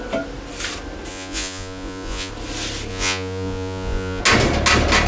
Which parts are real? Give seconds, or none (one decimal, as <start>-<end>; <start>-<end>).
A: 0.0-1.1; 2.3-2.9; 4.2-5.1